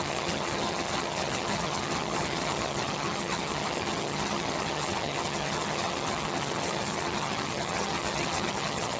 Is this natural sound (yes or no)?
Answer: no